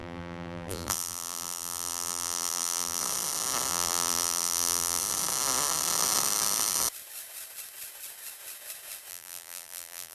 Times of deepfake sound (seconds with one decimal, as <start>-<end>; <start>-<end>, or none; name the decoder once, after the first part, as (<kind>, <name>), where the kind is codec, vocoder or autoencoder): 0.0-3.0 (vocoder, BigVGAN v2); 3.7-5.0; 9.1-10.1